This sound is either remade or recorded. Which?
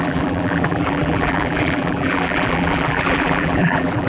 remade